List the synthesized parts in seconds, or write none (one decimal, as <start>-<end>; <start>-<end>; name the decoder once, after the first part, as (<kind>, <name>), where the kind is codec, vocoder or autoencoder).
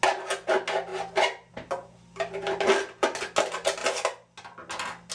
none